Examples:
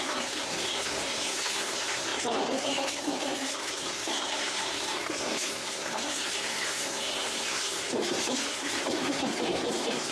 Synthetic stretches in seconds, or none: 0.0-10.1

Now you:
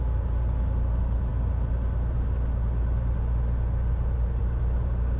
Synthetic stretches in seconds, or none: none

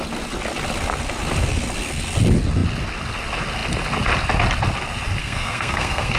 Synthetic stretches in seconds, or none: 5.2-6.2

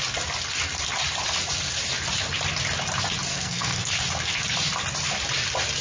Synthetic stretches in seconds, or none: 3.3-3.9

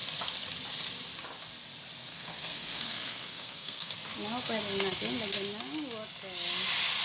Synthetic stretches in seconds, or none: 2.1-3.9

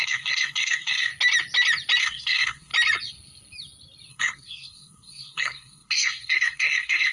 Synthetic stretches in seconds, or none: 0.0-1.1; 2.0-2.7; 4.1-7.1